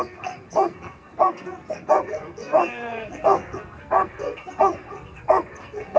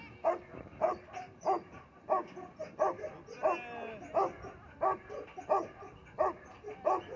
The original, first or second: second